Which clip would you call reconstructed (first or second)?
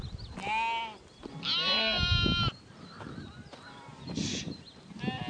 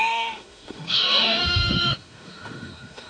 second